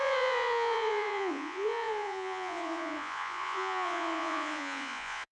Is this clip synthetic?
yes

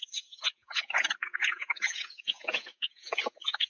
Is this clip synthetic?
yes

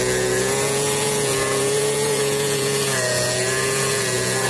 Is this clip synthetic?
yes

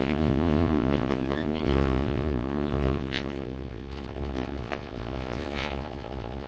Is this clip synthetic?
yes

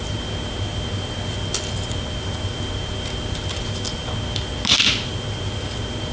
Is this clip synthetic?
no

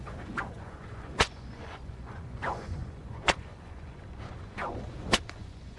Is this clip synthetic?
yes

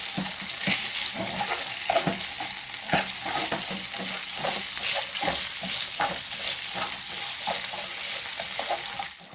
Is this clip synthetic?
no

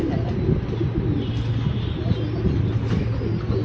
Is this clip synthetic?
no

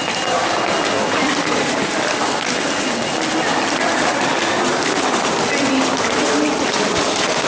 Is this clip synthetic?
no